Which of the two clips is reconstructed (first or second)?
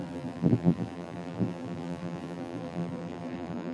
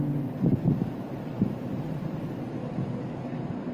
first